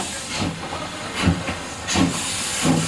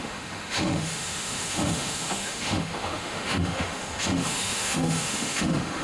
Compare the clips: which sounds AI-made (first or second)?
second